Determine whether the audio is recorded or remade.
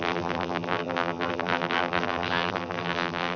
remade